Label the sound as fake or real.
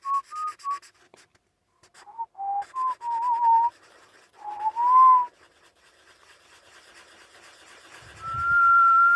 real